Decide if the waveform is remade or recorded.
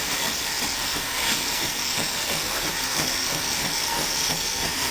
remade